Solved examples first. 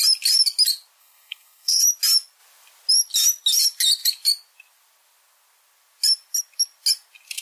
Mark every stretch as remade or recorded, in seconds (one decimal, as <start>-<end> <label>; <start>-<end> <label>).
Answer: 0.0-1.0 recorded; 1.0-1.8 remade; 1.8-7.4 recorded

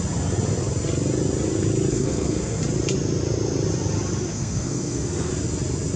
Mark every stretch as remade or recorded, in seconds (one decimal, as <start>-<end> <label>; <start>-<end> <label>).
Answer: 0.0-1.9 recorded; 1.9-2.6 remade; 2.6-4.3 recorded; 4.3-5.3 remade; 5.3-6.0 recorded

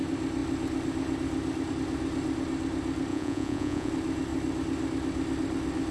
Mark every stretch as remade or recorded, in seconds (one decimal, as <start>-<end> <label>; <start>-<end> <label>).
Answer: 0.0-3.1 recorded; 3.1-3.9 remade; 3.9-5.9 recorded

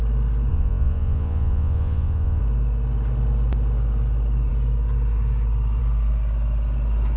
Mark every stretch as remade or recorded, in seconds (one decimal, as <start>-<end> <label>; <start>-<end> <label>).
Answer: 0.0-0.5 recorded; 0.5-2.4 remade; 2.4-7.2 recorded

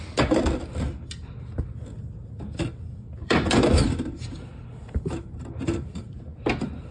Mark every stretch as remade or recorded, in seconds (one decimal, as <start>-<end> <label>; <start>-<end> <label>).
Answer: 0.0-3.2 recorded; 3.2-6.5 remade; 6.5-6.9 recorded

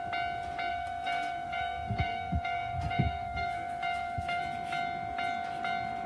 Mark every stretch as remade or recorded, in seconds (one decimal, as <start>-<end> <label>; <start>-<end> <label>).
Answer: 0.0-0.7 recorded; 0.7-4.4 remade; 4.4-6.1 recorded

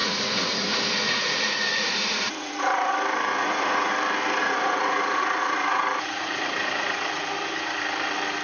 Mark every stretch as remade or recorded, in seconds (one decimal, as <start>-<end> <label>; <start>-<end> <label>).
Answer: 0.0-2.9 remade; 2.9-3.3 recorded; 3.3-3.9 remade; 3.9-4.4 recorded; 4.4-7.2 remade; 7.2-8.4 recorded

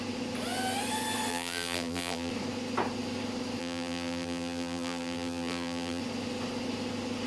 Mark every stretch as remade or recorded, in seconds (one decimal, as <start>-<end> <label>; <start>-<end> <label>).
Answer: 0.0-1.3 recorded; 1.3-2.3 remade; 2.3-3.6 recorded; 3.6-6.0 remade; 6.0-7.3 recorded